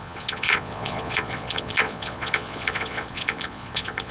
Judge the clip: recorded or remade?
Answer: remade